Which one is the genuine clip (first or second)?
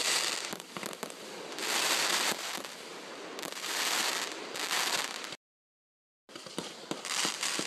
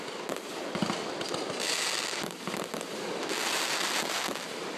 second